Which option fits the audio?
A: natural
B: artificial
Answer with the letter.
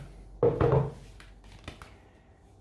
A